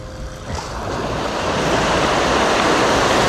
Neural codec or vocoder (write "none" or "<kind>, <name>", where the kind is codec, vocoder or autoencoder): none